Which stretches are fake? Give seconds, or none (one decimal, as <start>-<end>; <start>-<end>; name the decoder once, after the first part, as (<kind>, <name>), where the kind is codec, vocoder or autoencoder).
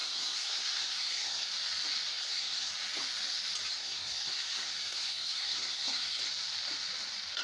0.0-1.5 (codec, SNAC); 2.1-2.7; 3.8-6.2